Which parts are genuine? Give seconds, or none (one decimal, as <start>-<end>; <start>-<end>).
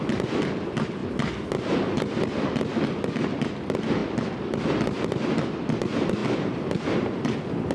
0.0-4.0; 4.6-7.7